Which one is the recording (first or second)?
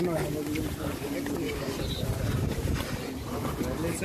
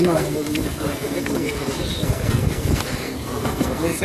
first